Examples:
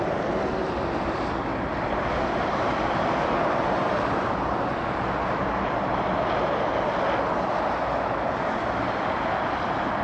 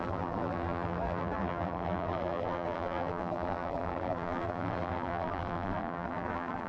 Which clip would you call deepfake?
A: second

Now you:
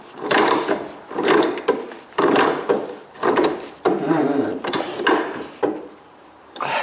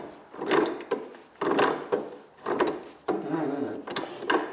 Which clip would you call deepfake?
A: first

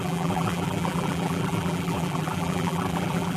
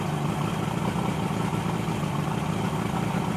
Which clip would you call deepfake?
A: first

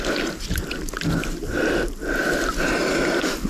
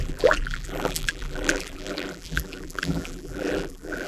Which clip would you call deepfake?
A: second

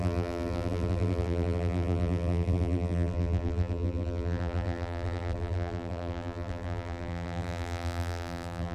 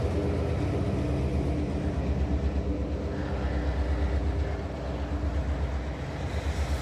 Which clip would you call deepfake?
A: first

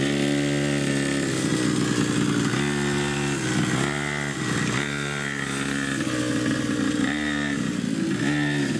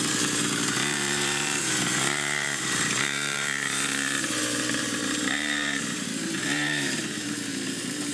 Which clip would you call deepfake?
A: second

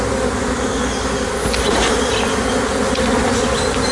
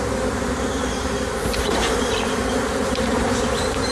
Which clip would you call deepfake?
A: second